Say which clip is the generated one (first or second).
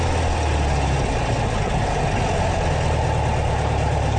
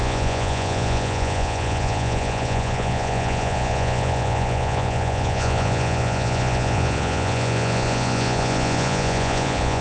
second